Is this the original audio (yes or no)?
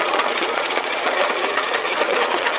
no